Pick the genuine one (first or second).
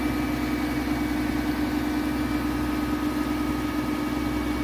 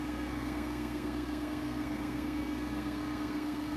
first